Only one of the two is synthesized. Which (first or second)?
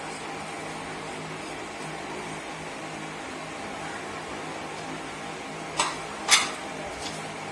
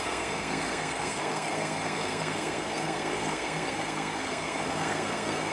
second